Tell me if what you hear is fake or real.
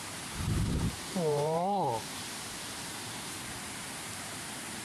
fake